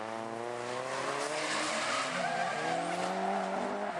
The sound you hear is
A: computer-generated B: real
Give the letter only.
B